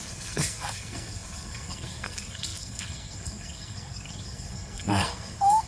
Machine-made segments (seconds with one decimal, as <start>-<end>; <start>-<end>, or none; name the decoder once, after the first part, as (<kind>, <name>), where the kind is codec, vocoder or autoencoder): 0.0-5.7 (codec, SNAC)